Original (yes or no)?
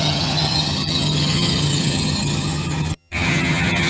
no